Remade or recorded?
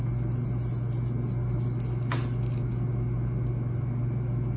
recorded